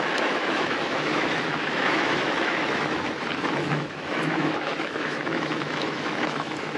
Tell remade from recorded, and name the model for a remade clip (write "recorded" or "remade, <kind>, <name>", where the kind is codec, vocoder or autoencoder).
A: remade, autoencoder, DAC-VAE